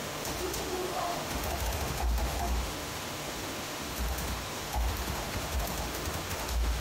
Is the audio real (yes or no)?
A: no